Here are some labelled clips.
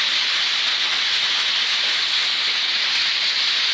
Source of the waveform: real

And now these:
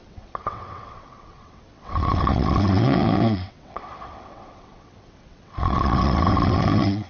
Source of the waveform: fake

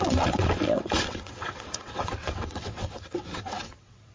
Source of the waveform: fake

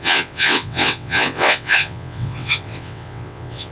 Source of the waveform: fake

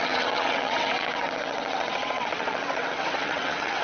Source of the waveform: fake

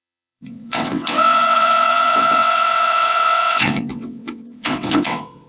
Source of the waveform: fake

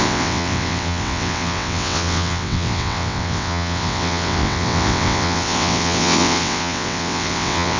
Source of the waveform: fake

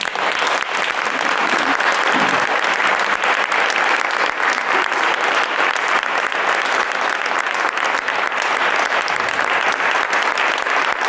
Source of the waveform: real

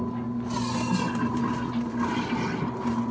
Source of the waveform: real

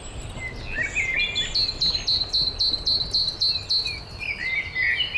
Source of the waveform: real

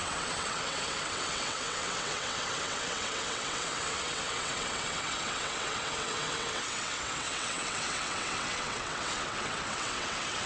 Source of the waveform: fake